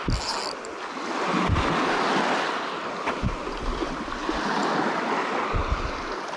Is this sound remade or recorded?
recorded